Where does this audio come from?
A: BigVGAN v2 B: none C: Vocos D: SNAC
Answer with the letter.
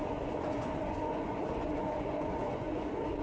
C